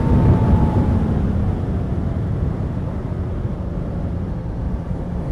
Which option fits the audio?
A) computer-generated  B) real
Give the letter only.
A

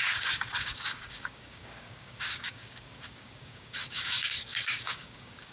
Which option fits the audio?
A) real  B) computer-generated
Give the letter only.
B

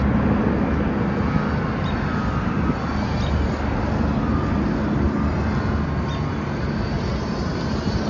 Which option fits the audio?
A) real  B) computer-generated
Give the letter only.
A